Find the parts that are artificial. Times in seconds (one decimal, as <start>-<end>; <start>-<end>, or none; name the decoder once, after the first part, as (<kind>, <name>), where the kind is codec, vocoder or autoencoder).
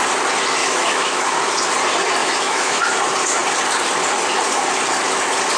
0.6-1.2 (autoencoder, DAC-VAE); 2.2-2.8